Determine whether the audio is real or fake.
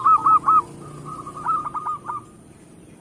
real